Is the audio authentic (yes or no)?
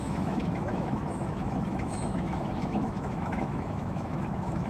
no